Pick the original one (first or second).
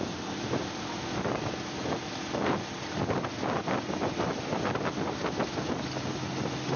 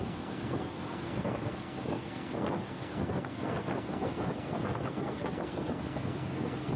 first